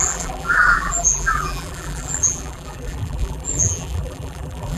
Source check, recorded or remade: remade